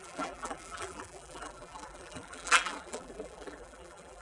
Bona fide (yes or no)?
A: no